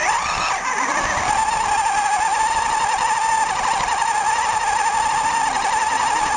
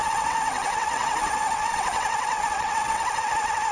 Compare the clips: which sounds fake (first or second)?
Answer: second